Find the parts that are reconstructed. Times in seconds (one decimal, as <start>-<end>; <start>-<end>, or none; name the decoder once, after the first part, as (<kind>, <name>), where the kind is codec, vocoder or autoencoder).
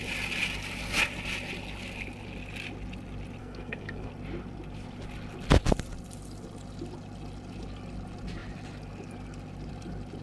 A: 3.4-4.1 (codec, SNAC)